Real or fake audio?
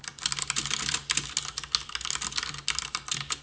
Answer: real